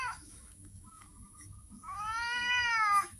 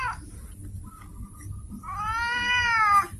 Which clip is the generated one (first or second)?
first